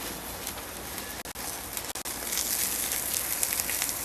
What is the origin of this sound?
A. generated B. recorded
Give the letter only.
B